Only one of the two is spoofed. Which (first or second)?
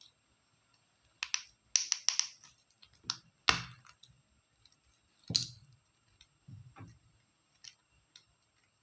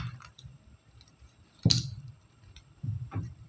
second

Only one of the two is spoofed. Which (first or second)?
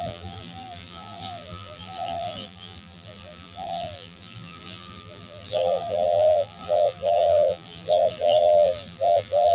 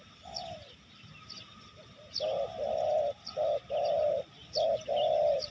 first